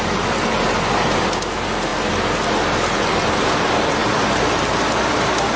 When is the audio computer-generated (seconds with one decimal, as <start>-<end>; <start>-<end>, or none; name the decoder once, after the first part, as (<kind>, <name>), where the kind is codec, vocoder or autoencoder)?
none